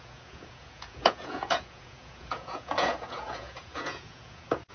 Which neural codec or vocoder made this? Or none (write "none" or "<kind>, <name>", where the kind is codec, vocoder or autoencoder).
vocoder, Vocos